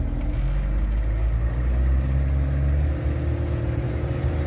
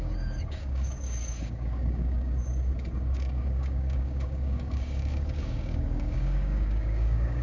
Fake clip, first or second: second